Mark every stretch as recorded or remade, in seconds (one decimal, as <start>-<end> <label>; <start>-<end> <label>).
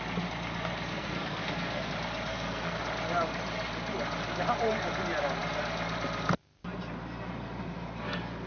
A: 0.0-0.9 recorded; 0.9-1.9 remade; 1.9-2.3 recorded; 2.3-2.8 remade; 2.8-8.5 recorded